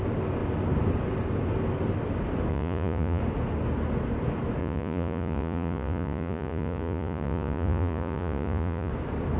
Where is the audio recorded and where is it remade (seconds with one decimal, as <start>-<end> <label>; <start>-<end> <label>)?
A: 0.0-2.5 recorded; 2.5-3.2 remade; 3.2-4.6 recorded; 4.6-8.9 remade; 8.9-9.4 recorded